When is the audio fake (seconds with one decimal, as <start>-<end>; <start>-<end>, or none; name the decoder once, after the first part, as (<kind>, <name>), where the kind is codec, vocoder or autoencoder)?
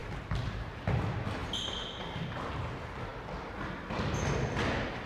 0.0-0.5 (vocoder, BigVGAN v2); 1.4-2.5